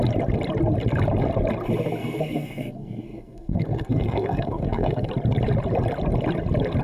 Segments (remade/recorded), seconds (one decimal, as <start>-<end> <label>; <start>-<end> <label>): 0.0-2.0 recorded; 2.0-5.1 remade; 5.1-6.8 recorded